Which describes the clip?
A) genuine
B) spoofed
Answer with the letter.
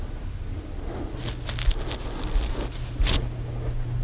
A